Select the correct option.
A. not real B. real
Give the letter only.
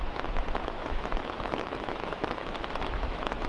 A